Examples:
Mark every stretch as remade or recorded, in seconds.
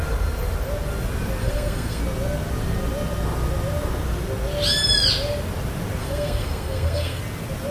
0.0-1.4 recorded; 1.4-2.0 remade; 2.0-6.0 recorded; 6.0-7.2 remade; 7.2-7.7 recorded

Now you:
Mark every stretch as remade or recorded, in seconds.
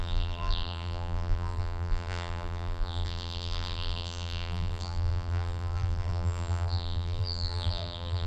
0.0-8.3 remade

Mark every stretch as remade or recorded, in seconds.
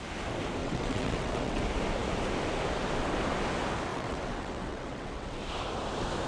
0.0-0.6 recorded; 0.6-1.6 remade; 1.6-3.9 recorded; 3.9-5.4 remade; 5.4-6.3 recorded